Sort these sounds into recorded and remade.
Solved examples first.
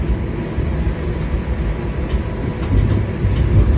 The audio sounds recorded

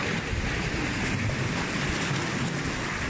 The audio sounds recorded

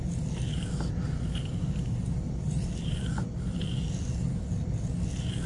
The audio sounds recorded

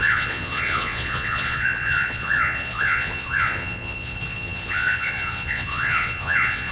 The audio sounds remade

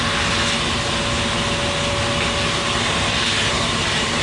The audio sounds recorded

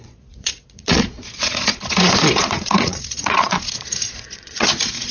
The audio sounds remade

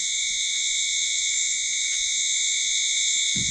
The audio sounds remade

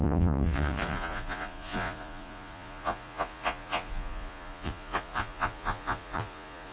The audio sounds remade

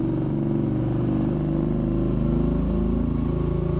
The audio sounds recorded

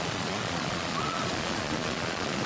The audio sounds remade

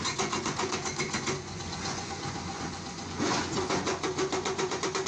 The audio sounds remade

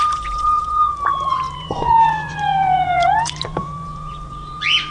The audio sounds remade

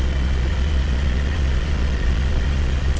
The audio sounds remade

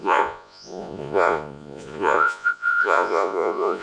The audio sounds remade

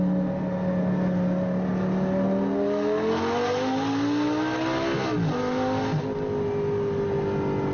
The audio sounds recorded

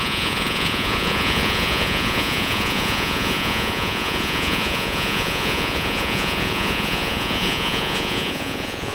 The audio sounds remade